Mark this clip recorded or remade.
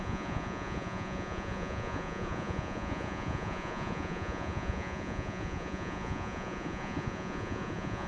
remade